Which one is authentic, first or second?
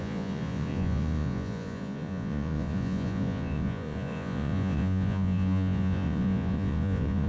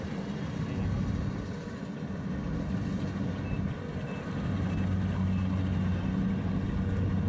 second